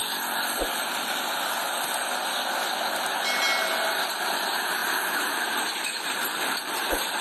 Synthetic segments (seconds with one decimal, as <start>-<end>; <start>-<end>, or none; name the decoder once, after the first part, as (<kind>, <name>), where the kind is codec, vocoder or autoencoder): 0.0-1.2 (vocoder, BigVGAN v2); 4.8-5.6